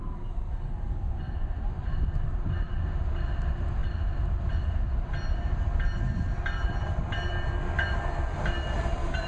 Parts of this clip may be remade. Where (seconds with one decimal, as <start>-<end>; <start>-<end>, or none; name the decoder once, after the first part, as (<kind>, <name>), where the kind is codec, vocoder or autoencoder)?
none